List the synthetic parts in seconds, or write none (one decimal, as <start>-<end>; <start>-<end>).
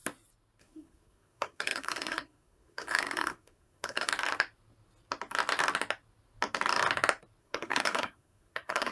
0.6-4.1; 7.4-8.9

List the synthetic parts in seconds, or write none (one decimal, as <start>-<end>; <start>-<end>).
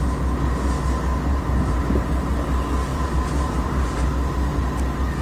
1.3-2.1; 2.9-4.1